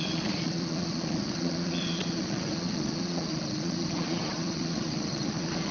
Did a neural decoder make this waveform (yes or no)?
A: yes